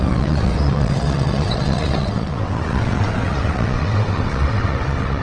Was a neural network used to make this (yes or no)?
yes